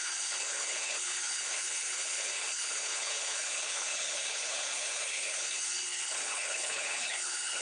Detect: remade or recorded remade